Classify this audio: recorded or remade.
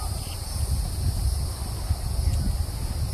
recorded